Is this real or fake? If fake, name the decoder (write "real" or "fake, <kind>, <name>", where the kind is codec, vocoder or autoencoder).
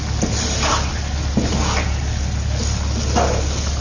real